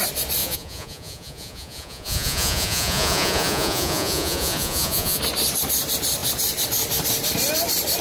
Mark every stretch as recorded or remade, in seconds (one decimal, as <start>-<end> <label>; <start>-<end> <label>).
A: 0.0-0.4 recorded; 0.4-5.2 remade; 5.2-8.0 recorded